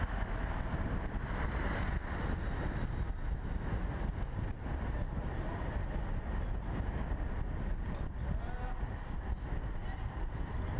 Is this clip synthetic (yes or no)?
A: no